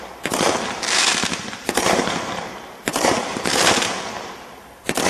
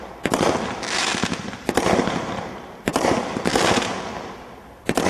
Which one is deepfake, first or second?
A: first